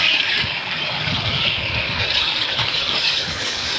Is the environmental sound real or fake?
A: fake